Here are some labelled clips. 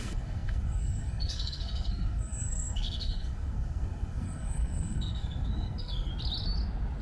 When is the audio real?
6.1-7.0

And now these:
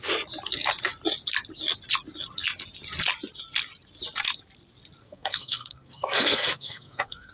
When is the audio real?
0.0-5.0